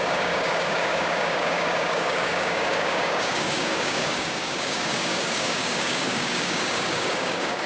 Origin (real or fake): fake